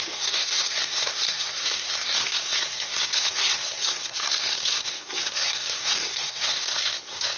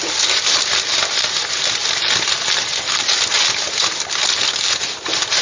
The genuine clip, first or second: second